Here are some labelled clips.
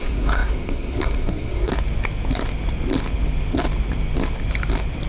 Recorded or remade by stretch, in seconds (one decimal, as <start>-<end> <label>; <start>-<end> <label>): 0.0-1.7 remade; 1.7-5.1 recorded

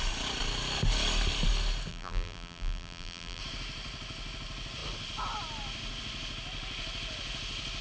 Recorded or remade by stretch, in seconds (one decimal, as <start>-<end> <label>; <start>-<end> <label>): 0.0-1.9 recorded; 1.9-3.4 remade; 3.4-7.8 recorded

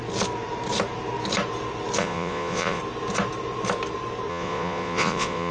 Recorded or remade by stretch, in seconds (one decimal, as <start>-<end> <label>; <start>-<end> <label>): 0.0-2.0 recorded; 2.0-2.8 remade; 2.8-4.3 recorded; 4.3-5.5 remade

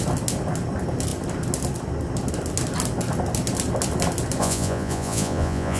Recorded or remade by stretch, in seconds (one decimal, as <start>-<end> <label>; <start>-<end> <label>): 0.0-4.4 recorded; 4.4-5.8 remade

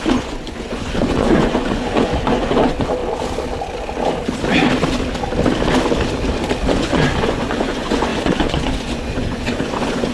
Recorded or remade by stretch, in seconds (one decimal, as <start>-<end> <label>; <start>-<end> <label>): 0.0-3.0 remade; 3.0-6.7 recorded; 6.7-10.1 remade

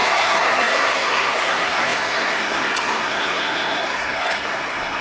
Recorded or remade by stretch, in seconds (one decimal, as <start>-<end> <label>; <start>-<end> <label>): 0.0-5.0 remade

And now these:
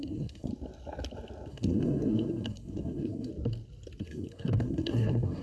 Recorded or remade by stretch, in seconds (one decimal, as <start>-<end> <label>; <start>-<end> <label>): 0.0-0.5 remade; 0.5-1.5 recorded; 1.5-3.3 remade; 3.3-4.0 recorded; 4.0-5.4 remade

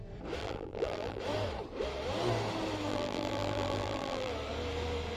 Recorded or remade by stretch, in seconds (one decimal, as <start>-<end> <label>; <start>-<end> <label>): 0.0-0.4 recorded; 0.4-1.2 remade; 1.2-2.9 recorded; 2.9-4.3 remade; 4.3-5.2 recorded